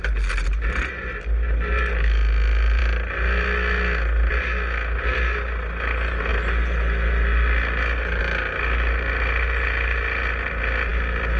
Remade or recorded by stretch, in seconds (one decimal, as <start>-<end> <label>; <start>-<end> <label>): 0.0-11.4 recorded